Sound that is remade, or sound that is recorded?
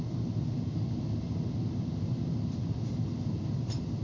recorded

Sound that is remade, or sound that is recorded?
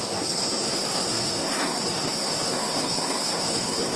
remade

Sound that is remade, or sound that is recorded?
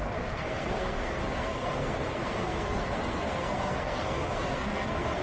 remade